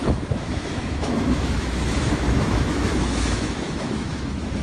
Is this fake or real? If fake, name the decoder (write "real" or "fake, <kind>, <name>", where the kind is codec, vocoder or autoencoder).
fake, autoencoder, DAC-VAE